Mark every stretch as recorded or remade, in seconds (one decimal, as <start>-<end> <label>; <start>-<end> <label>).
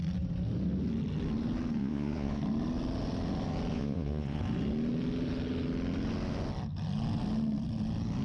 0.0-1.8 recorded; 1.8-2.4 remade; 2.4-3.7 recorded; 3.7-4.4 remade; 4.4-8.2 recorded